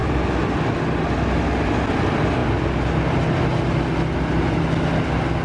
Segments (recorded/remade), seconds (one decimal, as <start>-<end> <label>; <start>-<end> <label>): 0.0-5.4 recorded